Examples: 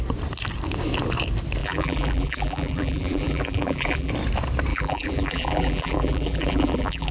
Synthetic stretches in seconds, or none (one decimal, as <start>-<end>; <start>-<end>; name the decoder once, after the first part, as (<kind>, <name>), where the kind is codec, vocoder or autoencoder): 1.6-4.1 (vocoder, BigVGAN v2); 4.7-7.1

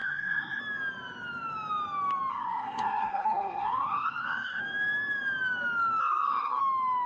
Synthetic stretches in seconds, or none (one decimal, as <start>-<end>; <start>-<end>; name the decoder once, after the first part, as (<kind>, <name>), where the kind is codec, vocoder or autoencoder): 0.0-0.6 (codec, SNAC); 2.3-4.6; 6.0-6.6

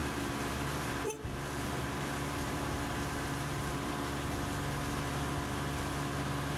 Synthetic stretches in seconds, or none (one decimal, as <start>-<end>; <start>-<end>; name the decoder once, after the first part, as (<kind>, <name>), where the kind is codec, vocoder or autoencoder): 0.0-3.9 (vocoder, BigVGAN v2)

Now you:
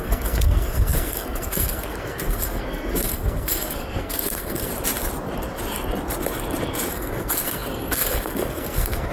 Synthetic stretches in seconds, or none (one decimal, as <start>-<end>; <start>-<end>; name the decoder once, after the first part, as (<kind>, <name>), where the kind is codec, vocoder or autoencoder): 0.0-4.7 (codec, SNAC); 6.9-9.1